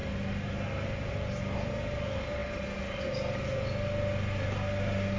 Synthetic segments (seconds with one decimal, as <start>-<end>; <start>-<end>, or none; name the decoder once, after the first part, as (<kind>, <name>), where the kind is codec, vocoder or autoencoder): none